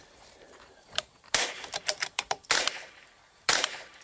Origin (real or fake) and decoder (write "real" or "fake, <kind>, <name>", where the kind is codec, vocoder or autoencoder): fake, vocoder, BigVGAN v2